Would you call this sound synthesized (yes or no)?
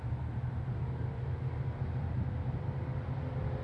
no